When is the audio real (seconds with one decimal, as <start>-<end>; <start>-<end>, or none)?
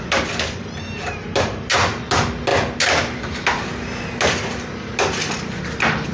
0.0-6.1